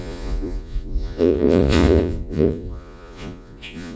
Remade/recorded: remade